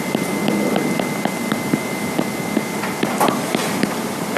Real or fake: real